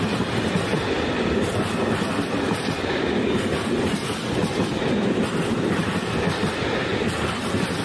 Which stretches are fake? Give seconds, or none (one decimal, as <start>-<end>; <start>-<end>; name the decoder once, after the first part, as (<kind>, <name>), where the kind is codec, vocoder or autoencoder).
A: none